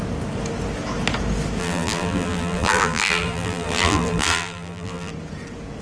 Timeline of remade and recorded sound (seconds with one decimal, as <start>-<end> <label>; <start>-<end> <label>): 0.0-1.6 recorded; 1.6-5.1 remade; 5.1-5.8 recorded